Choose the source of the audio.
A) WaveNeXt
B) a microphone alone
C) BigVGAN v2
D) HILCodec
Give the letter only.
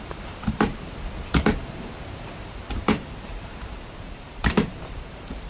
C